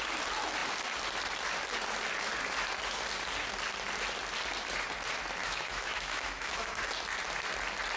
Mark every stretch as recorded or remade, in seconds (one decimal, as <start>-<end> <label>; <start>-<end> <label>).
0.0-5.4 recorded; 5.4-6.8 remade; 6.8-8.0 recorded